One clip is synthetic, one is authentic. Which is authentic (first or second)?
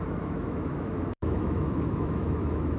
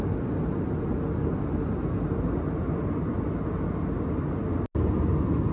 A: second